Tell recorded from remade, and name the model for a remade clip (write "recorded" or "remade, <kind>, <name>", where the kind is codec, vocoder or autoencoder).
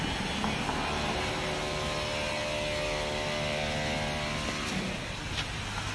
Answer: recorded